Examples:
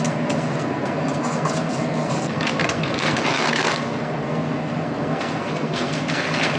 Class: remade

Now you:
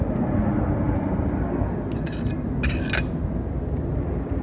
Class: recorded